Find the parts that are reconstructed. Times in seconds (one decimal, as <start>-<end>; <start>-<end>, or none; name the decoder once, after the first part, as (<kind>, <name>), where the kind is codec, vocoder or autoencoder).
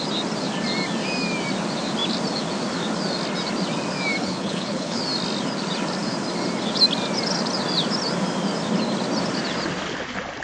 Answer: 4.2-5.0 (codec, HILCodec)